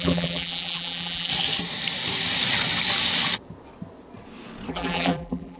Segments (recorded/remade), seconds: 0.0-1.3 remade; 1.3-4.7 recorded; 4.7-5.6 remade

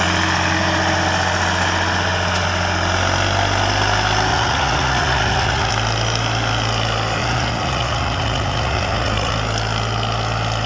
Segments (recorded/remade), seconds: 0.0-4.3 recorded; 4.3-5.7 remade; 5.7-7.2 recorded; 7.2-9.3 remade; 9.3-10.7 recorded

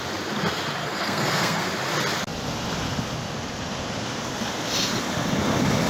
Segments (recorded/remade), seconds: 0.0-0.8 recorded; 0.8-1.7 remade; 1.7-5.9 recorded

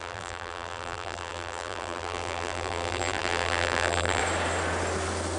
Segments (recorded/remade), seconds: 0.0-4.2 remade; 4.2-5.4 recorded

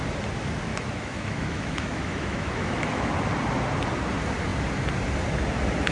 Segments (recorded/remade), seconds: 0.0-0.7 recorded; 0.7-3.1 remade; 3.1-5.9 recorded

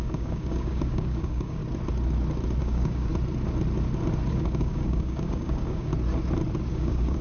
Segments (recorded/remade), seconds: 0.0-1.6 remade; 1.6-2.6 recorded; 2.6-3.1 remade; 3.1-4.3 recorded; 4.3-5.9 remade; 5.9-6.7 recorded; 6.7-7.2 remade

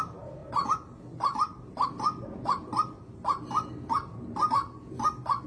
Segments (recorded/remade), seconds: 0.0-5.5 recorded